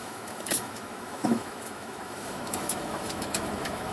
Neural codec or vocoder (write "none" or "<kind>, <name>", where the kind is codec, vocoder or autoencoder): autoencoder, DAC-VAE